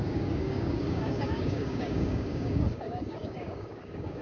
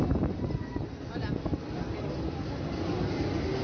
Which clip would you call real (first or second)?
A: second